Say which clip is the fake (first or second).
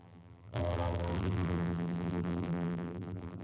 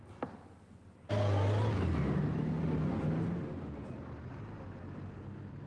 first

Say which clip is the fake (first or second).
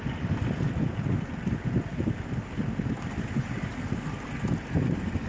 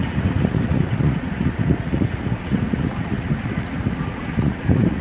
second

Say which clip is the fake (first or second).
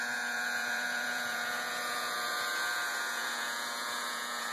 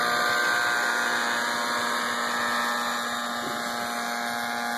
first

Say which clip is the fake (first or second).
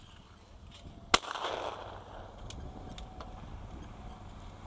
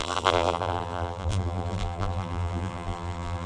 second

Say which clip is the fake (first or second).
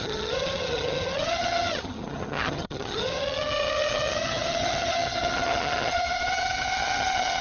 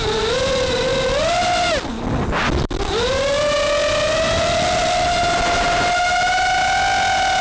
first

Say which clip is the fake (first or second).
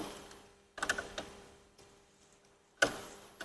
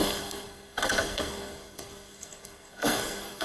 second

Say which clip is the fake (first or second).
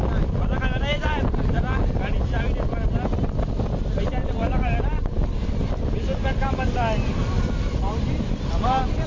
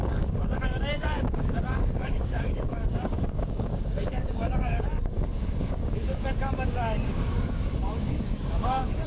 second